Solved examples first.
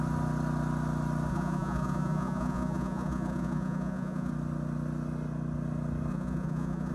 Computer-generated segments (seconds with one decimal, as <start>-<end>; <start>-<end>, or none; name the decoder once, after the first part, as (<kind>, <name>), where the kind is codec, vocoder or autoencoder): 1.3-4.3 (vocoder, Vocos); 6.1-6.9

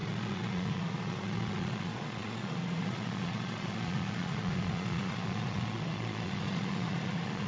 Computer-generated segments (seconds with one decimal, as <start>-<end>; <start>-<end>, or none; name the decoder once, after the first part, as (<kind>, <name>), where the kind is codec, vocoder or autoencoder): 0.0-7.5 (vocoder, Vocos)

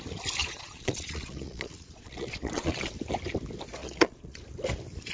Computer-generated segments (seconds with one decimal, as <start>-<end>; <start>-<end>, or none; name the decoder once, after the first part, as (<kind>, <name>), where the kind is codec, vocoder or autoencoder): 0.4-2.9 (vocoder, Vocos); 3.8-4.4